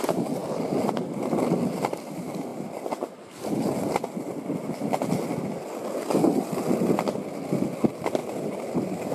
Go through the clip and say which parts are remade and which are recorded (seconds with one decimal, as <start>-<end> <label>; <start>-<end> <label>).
0.0-9.1 recorded